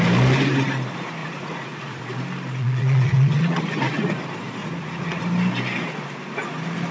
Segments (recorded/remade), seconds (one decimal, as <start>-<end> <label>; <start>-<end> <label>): 0.0-1.2 recorded; 1.2-2.0 remade; 2.0-2.6 recorded; 2.6-3.6 remade; 3.6-4.6 recorded; 4.6-5.2 remade; 5.2-6.9 recorded